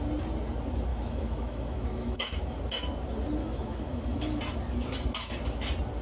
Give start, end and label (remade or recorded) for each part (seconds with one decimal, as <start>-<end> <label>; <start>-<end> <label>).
0.0-0.9 recorded; 0.9-2.4 remade; 2.4-3.4 recorded; 3.4-4.4 remade; 4.4-6.0 recorded